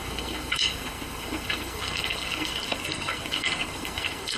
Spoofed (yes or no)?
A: yes